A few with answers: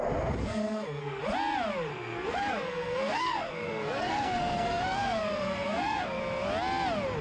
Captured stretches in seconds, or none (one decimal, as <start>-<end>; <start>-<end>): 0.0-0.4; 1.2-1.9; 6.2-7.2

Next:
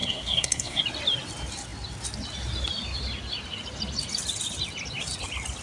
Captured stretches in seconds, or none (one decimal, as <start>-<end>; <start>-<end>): 0.8-5.6

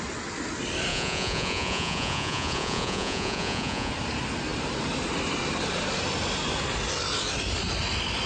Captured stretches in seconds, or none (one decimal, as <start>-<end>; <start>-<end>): 0.0-0.9; 3.9-8.3